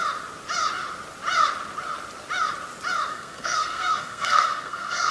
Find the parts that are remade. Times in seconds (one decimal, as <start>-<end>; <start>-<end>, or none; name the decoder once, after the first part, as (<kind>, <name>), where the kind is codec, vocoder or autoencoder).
3.1-5.1 (codec, SNAC)